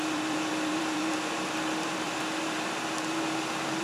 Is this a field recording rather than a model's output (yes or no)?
no